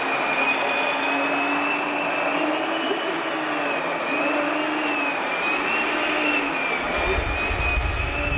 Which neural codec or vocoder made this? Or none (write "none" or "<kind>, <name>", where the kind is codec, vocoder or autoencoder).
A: none